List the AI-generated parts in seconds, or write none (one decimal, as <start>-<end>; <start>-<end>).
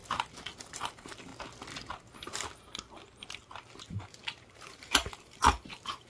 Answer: 0.7-1.3; 3.8-6.1